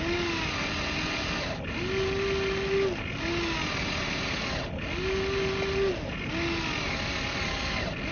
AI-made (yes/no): no